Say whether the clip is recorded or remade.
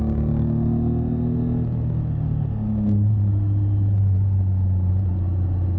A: recorded